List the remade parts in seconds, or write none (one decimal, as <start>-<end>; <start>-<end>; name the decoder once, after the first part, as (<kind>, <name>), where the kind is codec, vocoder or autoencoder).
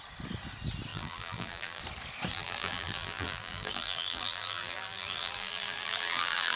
0.9-1.8 (vocoder, BigVGAN v2); 2.3-6.6